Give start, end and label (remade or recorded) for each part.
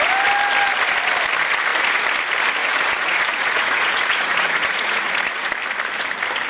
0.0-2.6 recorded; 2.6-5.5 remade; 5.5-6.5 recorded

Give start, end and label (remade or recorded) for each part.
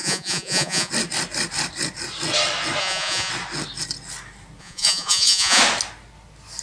0.0-0.9 remade; 0.9-2.8 recorded; 2.8-3.3 remade; 3.3-4.6 recorded; 4.6-5.6 remade; 5.6-6.6 recorded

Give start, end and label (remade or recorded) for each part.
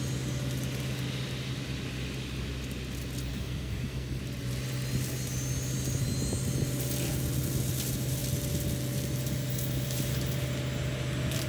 0.0-3.3 recorded; 3.3-4.2 remade; 4.2-11.5 recorded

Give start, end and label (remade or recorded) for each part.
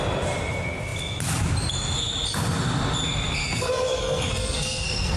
0.0-3.4 recorded; 3.4-5.2 remade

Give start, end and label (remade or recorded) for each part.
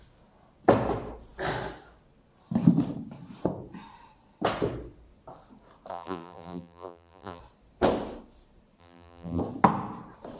0.0-5.9 recorded; 5.9-7.4 remade; 7.4-8.8 recorded; 8.8-9.4 remade; 9.4-10.4 recorded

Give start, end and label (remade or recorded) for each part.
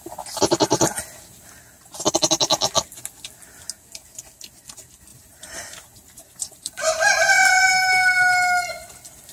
0.0-5.1 recorded; 5.1-6.9 remade; 6.9-9.3 recorded